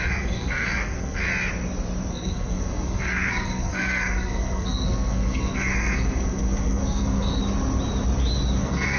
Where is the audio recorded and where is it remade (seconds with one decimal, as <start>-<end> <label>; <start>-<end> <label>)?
0.0-1.3 remade; 1.3-2.1 recorded; 2.1-7.4 remade; 7.4-8.6 recorded; 8.6-9.0 remade